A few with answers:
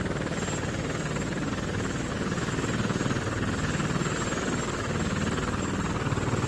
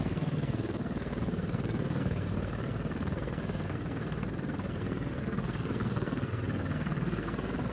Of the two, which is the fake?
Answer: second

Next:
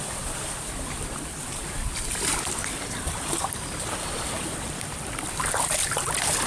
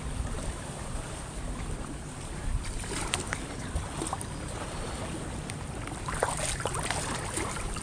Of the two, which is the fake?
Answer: first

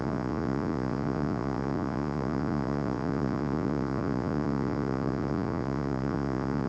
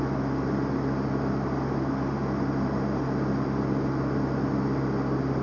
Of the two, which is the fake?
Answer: first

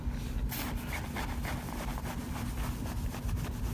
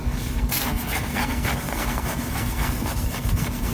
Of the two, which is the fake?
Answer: second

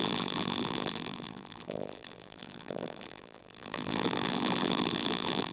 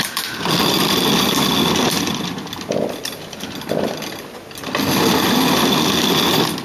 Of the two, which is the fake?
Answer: first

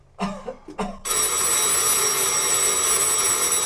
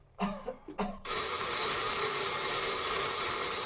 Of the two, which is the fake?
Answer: second